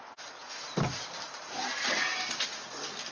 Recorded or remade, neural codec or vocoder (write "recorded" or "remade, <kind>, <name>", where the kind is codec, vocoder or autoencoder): recorded